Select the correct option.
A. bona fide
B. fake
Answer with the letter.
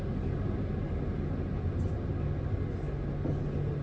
A